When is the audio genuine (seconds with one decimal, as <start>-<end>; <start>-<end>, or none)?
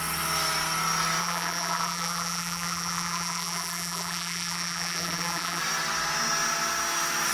0.0-1.2; 5.6-7.3